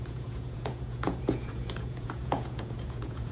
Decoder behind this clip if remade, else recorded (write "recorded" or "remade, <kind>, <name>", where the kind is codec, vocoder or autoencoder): remade, vocoder, Vocos